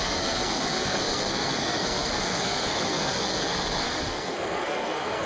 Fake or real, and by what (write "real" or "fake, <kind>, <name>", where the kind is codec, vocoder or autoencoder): fake, codec, SNAC